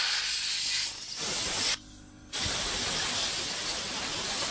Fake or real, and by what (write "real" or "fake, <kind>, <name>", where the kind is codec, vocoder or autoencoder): real